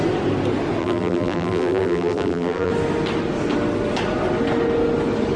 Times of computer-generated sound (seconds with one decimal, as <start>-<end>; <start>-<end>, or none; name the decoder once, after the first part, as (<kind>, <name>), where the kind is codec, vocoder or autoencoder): 0.8-2.7 (vocoder, BigVGAN v2)